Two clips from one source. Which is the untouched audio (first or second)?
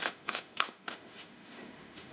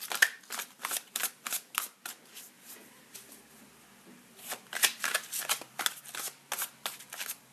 second